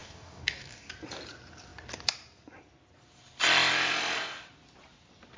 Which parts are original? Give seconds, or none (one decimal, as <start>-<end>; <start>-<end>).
0.9-5.4